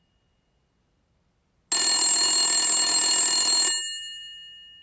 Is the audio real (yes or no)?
yes